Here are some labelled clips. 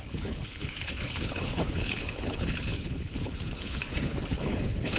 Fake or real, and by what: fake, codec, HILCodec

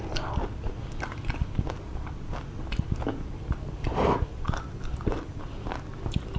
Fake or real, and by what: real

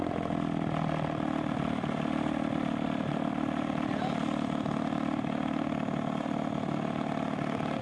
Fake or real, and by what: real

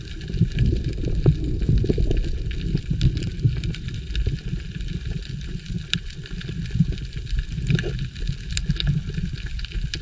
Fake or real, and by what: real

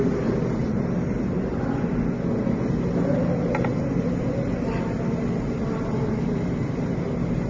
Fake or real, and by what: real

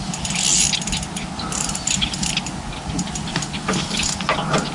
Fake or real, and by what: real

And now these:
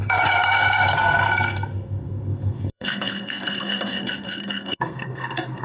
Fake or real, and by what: fake, codec, SNAC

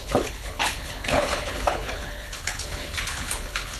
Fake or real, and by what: fake, codec, HILCodec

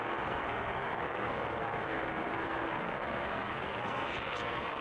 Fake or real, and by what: fake, codec, SNAC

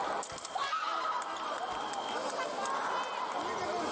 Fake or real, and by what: real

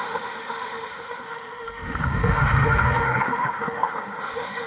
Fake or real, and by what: fake, autoencoder, DAC-VAE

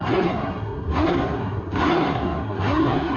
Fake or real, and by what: fake, codec, SNAC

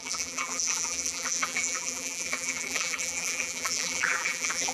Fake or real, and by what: fake, vocoder, BigVGAN v2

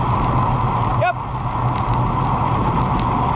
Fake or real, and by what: real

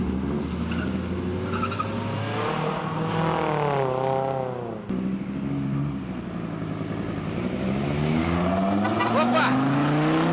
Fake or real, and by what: real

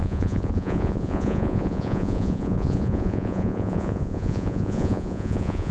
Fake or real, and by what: fake, vocoder, Vocos